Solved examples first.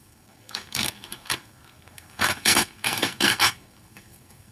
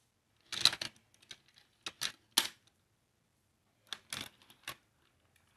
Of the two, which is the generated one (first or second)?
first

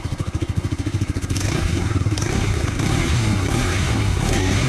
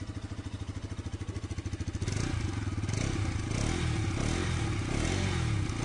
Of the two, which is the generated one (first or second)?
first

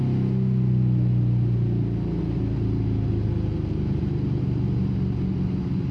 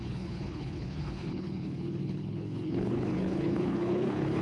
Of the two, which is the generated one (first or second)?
second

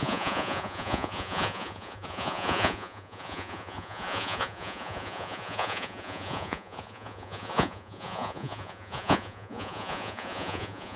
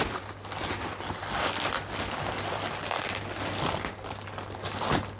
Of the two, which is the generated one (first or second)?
first